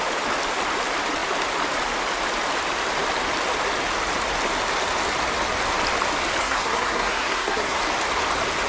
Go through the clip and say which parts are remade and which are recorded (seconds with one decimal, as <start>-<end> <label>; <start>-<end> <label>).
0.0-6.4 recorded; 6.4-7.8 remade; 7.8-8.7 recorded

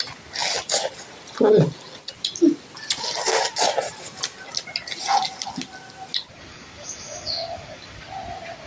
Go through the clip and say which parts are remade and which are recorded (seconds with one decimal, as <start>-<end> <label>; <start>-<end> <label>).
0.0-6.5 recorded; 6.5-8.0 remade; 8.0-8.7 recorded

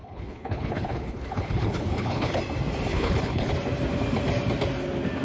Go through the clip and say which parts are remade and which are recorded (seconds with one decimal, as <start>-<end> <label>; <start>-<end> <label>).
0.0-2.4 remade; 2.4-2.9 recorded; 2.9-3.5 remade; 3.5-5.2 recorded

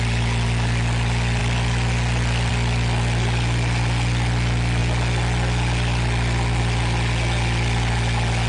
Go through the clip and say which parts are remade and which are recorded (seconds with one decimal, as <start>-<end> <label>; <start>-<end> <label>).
0.0-8.5 recorded

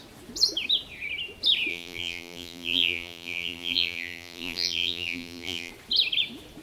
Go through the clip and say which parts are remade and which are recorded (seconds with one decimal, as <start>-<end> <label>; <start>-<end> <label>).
0.0-1.7 recorded; 1.7-5.7 remade; 5.7-6.6 recorded

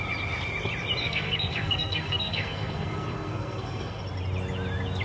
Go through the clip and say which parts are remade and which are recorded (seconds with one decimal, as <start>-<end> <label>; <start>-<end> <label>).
0.0-1.0 recorded; 1.0-4.0 remade; 4.0-5.0 recorded